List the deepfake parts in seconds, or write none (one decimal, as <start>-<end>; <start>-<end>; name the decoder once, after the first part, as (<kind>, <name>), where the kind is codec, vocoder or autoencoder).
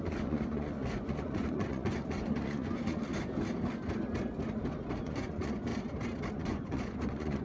0.0-3.1 (vocoder, Vocos); 5.0-5.7; 6.3-7.4